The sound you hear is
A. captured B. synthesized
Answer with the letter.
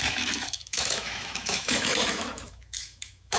B